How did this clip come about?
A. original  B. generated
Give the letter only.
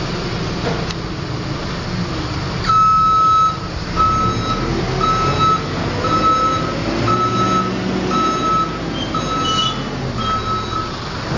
A